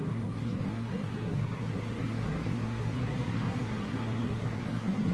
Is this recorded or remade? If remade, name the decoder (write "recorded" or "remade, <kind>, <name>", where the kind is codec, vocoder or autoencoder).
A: remade, codec, SNAC